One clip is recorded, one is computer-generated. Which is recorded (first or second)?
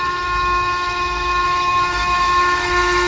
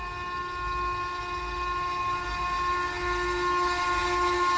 second